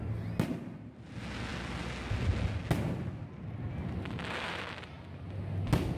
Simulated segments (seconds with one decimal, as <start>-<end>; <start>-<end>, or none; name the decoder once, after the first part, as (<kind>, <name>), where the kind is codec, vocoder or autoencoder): none